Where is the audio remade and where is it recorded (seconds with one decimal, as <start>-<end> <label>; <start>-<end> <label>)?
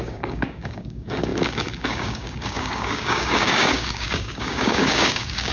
0.0-5.5 remade